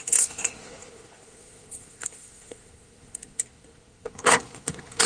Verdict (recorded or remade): remade